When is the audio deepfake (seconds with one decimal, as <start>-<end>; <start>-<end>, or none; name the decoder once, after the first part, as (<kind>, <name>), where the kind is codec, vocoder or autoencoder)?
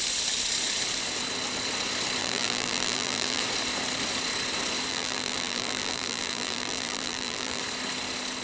2.2-3.4 (vocoder, BigVGAN v2); 4.9-7.6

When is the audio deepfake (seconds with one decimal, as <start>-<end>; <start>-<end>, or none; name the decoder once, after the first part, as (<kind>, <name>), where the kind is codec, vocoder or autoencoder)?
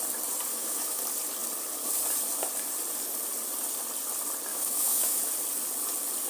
0.5-1.0 (autoencoder, DAC-VAE); 4.5-5.2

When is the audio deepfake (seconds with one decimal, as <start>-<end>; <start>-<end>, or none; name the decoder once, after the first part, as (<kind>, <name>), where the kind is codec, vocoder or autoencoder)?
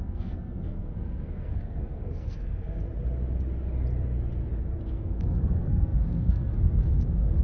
0.0-2.9 (codec, SNAC); 4.9-7.4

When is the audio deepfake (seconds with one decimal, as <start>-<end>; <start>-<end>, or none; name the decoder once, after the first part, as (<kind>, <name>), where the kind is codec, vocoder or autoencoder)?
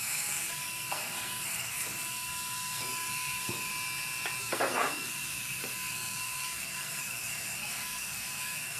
0.0-3.7 (codec, SNAC); 4.4-8.8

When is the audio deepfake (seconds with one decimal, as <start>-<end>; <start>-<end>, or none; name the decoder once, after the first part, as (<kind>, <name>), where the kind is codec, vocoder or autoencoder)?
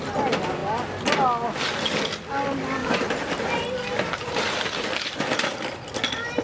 2.8-5.2 (vocoder, BigVGAN v2)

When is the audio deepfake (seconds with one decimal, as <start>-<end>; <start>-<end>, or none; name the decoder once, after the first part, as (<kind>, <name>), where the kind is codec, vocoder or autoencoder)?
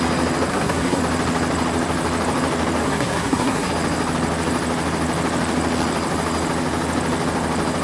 0.5-1.0 (codec, SNAC); 2.8-3.7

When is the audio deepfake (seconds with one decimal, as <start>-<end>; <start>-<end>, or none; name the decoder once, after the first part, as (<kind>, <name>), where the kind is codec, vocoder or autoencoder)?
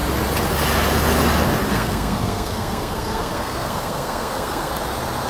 1.7-4.7 (codec, SNAC)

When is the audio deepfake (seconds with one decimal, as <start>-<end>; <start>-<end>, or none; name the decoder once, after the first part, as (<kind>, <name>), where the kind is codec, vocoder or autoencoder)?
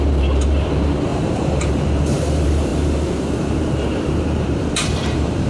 0.0-5.5 (vocoder, BigVGAN v2)